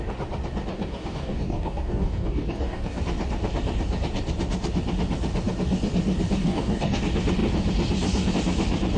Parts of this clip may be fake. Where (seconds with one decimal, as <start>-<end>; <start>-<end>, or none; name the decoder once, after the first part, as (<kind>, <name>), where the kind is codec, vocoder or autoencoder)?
0.7-3.0 (codec, DAC); 6.4-7.0